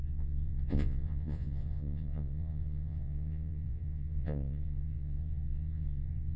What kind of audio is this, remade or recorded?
remade